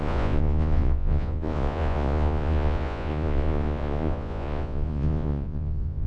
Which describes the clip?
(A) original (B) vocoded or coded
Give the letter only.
B